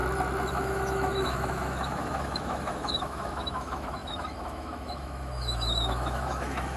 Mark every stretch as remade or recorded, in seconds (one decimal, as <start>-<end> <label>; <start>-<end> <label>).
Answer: 0.0-0.5 recorded; 0.5-6.8 remade